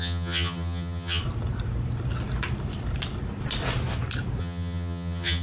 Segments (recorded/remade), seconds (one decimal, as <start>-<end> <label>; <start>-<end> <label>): 0.0-1.2 remade; 1.2-4.4 recorded; 4.4-5.4 remade